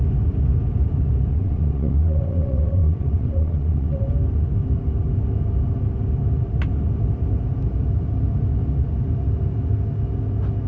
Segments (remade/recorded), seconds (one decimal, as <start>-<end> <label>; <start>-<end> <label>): 0.0-1.3 recorded; 1.3-4.0 remade; 4.0-10.7 recorded